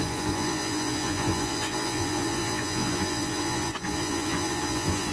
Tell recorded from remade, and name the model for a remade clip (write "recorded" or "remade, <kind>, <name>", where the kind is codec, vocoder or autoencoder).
remade, vocoder, Vocos